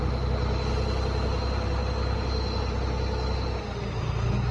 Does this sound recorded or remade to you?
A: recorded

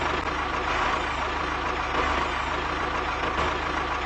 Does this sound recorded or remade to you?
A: recorded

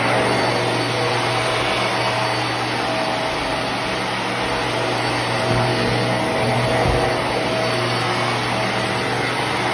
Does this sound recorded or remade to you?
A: recorded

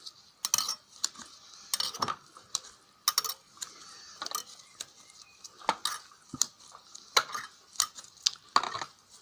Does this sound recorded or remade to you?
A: recorded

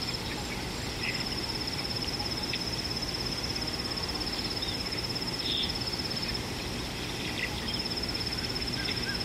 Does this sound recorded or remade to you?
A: recorded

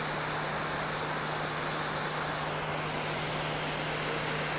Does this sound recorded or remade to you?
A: recorded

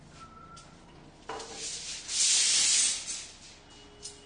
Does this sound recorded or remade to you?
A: recorded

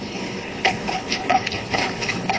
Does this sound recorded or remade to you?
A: remade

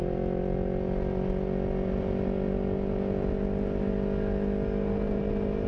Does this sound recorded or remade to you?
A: recorded